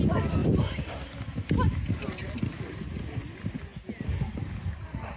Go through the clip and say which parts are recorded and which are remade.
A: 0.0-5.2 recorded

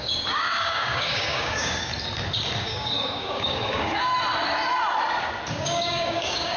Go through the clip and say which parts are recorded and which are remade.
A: 0.0-1.9 remade; 1.9-2.6 recorded; 2.6-4.1 remade; 4.1-5.5 recorded; 5.5-6.6 remade